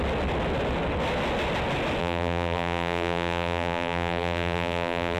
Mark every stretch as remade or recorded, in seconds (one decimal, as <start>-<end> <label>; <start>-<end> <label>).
0.0-2.0 recorded; 2.0-5.2 remade